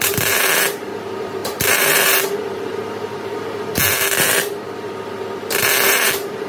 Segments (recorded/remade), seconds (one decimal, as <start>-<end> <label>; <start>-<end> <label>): 0.0-6.5 remade